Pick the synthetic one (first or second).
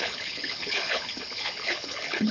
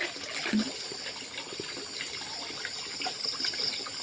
first